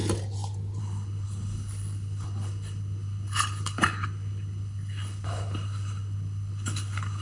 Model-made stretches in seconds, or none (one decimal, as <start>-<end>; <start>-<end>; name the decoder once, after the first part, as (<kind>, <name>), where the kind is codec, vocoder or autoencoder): 0.8-7.2 (codec, HILCodec)